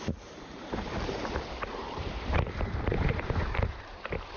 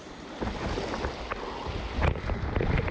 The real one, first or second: second